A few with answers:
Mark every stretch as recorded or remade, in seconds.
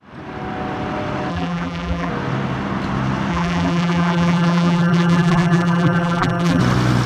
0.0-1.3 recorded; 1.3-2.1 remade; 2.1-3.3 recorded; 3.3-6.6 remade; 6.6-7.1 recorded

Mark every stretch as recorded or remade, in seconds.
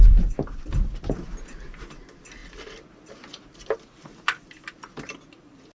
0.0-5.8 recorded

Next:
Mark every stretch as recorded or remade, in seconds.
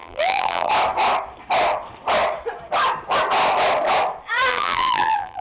0.0-0.7 remade; 0.7-4.5 recorded; 4.5-5.4 remade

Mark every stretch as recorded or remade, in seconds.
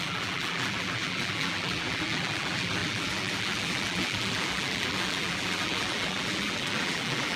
0.0-7.4 remade